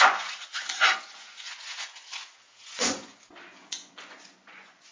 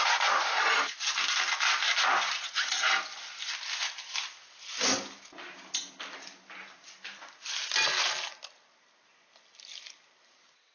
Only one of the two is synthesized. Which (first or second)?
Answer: first